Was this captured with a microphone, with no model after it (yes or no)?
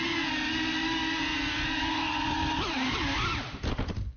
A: yes